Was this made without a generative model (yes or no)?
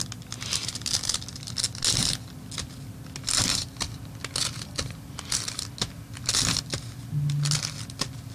yes